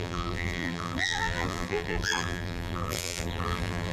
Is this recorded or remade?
remade